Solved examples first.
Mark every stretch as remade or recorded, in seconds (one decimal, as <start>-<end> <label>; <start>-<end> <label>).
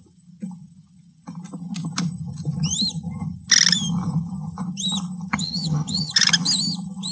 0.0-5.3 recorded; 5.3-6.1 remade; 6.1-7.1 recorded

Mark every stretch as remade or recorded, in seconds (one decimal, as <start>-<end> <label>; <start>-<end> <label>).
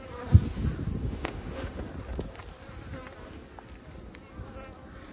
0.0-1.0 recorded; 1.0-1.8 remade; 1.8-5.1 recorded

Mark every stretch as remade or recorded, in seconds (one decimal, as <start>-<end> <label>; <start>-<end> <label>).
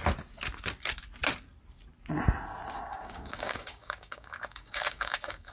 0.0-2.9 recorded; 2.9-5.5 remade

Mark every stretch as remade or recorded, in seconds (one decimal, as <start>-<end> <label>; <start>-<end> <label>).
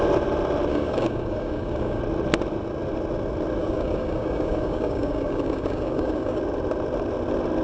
0.0-0.7 recorded; 0.7-2.0 remade; 2.0-3.6 recorded; 3.6-6.4 remade; 6.4-7.6 recorded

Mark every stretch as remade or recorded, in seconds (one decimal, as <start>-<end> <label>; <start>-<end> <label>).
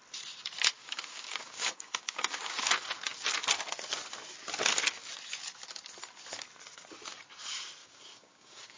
0.0-0.8 recorded; 0.8-2.7 remade; 2.7-7.8 recorded; 7.8-8.8 remade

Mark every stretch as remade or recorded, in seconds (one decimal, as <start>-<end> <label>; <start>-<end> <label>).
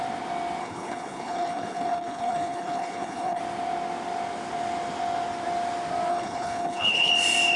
0.0-0.6 recorded; 0.6-3.4 remade; 3.4-6.1 recorded; 6.1-7.1 remade; 7.1-7.6 recorded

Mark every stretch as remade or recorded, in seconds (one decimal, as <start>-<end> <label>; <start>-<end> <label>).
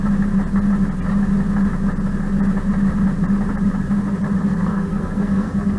0.0-4.5 recorded; 4.5-5.8 remade